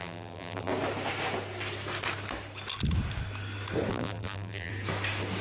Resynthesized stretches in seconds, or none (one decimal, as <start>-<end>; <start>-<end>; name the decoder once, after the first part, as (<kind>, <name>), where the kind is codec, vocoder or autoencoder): 0.0-0.7 (vocoder, BigVGAN v2); 3.9-4.7